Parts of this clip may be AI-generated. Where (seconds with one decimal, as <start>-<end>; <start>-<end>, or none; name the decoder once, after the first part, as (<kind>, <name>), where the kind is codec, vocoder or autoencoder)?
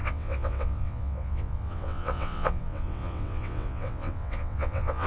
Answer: 0.0-5.1 (vocoder, WaveNeXt)